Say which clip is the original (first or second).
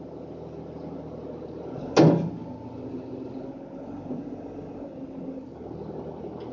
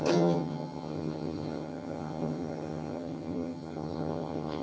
first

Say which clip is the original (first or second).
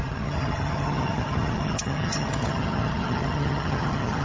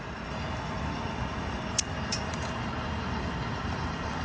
second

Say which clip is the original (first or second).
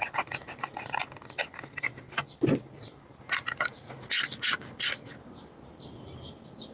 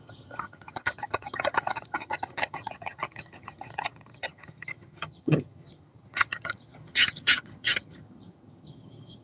first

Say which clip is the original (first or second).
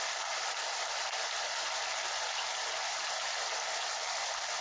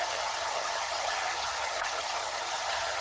first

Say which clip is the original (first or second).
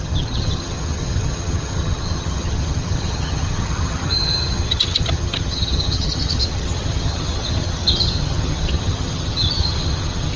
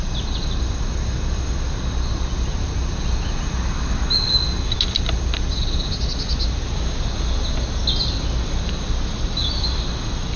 second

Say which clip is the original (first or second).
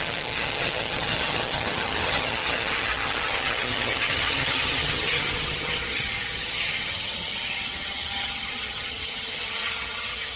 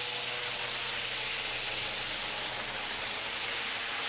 second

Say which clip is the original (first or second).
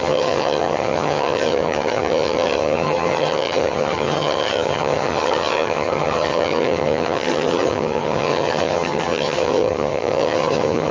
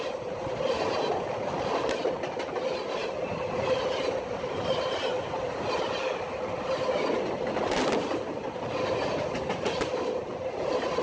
second